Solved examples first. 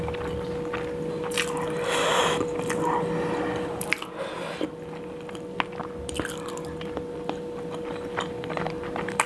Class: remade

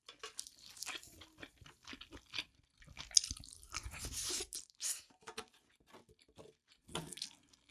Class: recorded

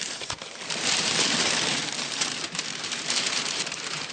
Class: remade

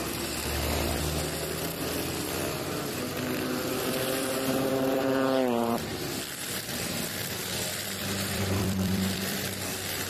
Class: remade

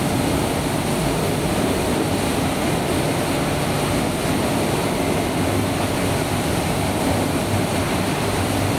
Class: recorded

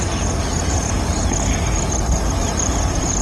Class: remade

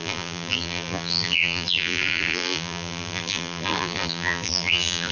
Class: remade